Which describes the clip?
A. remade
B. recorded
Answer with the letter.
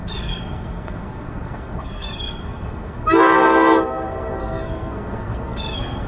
A